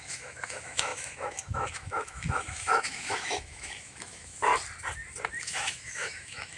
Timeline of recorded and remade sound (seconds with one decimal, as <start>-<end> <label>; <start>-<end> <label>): 0.0-4.5 remade; 4.5-5.4 recorded; 5.4-6.6 remade